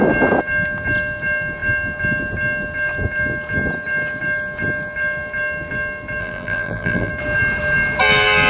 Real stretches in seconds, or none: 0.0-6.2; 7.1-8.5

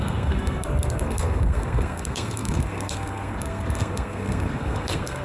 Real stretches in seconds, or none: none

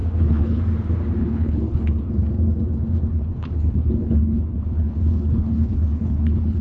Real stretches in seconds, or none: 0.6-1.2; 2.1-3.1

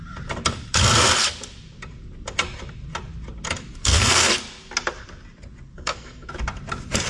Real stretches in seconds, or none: 0.0-3.8; 4.3-5.7; 6.3-7.1

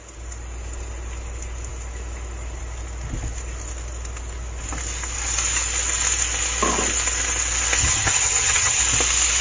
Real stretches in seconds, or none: 0.0-7.8; 8.8-9.4

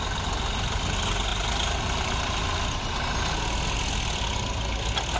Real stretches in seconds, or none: 0.0-5.2

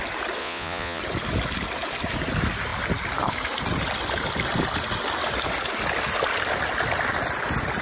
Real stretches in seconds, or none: 0.0-0.4; 1.0-7.8